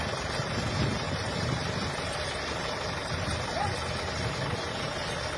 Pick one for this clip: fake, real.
fake